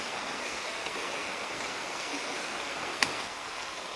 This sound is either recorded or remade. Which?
remade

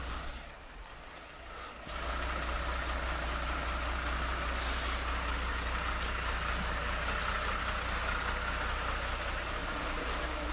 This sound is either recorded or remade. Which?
recorded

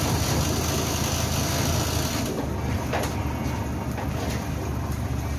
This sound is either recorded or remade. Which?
recorded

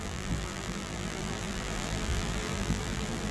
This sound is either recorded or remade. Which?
remade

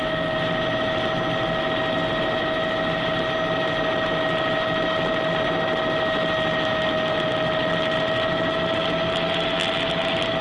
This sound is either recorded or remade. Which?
recorded